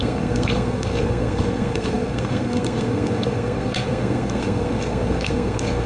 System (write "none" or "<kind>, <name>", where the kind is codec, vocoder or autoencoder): codec, SNAC